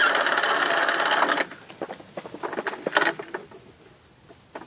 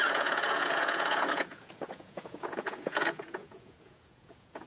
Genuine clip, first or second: first